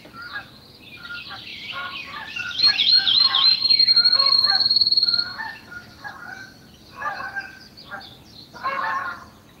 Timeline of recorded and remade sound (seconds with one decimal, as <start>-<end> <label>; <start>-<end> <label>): 0.0-1.5 recorded; 1.5-6.1 remade; 6.1-9.6 recorded